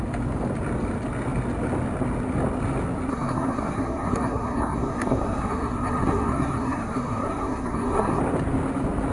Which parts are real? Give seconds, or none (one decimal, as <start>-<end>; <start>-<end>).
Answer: 0.0-3.1; 8.2-9.1

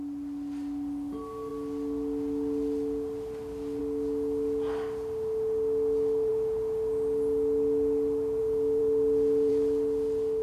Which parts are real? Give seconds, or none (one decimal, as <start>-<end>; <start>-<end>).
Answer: 0.0-10.4

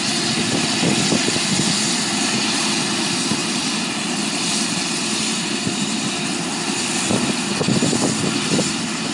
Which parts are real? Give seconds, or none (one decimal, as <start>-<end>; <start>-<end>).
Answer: 0.0-9.1

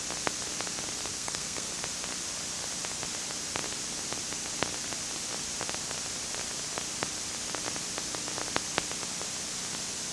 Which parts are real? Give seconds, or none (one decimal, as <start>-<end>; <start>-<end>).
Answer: 0.0-1.1; 1.7-10.1